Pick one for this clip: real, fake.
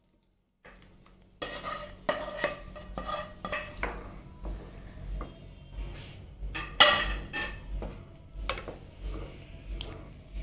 real